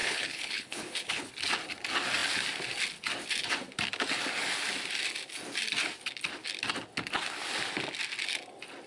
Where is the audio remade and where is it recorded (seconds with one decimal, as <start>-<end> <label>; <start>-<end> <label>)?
0.0-1.3 remade; 1.3-8.9 recorded